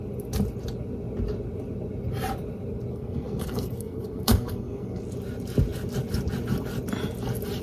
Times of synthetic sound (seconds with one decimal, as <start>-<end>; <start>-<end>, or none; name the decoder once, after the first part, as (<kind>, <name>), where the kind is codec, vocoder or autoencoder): 2.9-5.0 (codec, SNAC)